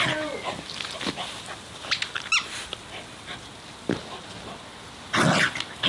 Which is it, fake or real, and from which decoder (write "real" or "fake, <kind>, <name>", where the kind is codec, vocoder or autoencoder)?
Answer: real